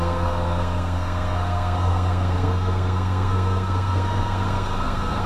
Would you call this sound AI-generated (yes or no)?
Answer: yes